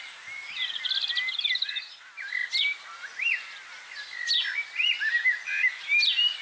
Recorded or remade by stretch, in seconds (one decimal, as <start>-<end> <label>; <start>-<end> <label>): 0.0-6.4 recorded